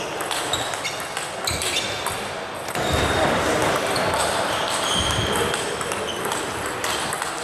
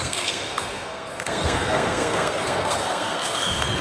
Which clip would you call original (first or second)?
first